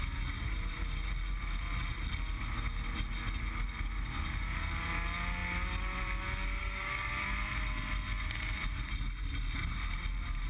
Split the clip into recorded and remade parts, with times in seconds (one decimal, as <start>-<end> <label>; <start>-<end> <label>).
0.0-6.6 recorded; 6.6-7.1 remade; 7.1-10.5 recorded